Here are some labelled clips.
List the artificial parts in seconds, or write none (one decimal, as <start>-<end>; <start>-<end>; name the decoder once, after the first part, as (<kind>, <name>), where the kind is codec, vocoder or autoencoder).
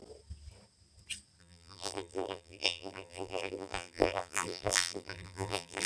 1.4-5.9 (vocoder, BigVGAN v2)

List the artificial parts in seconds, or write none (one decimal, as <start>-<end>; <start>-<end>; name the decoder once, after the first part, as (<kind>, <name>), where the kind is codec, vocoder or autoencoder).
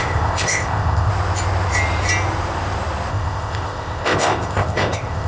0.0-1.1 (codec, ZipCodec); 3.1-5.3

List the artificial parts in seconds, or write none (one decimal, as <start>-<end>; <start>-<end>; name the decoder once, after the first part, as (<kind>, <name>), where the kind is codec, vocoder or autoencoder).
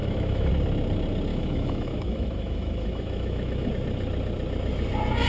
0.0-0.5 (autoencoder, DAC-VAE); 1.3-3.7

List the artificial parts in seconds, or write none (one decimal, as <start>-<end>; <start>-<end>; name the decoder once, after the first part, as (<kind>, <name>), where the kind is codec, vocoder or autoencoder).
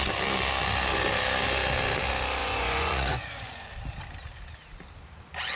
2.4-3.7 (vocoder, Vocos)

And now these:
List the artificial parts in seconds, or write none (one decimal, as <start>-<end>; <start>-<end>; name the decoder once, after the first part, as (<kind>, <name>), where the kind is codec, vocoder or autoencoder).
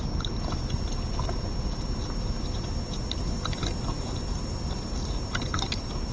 none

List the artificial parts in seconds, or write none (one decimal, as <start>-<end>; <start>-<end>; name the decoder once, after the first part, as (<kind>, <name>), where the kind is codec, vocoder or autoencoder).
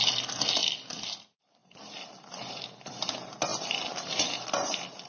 none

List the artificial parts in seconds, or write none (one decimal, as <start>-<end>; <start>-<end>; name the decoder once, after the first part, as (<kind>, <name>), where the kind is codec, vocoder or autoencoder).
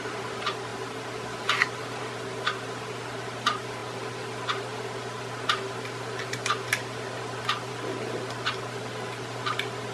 none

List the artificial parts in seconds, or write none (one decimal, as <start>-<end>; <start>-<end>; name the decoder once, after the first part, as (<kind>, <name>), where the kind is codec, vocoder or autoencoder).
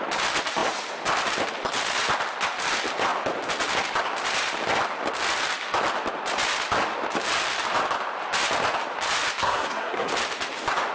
9.4-10.1 (codec, SNAC)